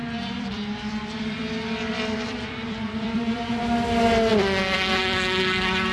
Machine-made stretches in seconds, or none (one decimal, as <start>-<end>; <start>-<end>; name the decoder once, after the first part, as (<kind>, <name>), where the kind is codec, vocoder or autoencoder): 0.0-3.5 (vocoder, BigVGAN v2); 4.3-5.0